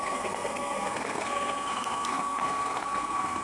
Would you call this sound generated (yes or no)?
yes